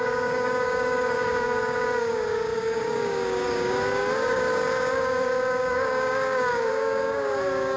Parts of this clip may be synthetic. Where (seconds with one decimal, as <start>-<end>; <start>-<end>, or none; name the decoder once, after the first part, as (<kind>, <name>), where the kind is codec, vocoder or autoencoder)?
0.0-7.8 (codec, DAC)